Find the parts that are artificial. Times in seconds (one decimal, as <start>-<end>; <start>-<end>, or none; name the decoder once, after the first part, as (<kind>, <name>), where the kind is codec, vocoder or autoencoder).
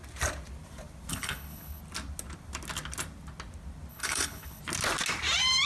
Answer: 1.1-1.8 (codec, HILCodec); 3.9-4.6